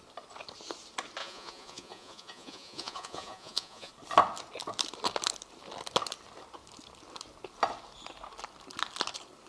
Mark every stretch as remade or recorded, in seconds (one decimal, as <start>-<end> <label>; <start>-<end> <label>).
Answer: 0.0-1.2 recorded; 1.2-3.9 remade; 3.9-9.5 recorded